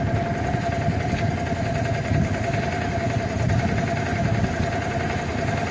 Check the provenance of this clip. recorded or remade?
recorded